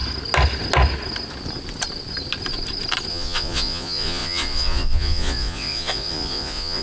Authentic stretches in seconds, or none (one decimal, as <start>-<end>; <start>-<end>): 0.0-3.1